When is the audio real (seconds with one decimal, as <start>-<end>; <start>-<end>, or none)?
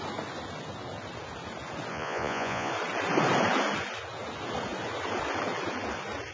0.0-1.9; 2.7-6.3